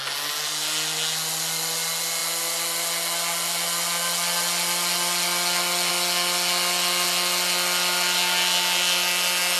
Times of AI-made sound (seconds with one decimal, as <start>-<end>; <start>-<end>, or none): none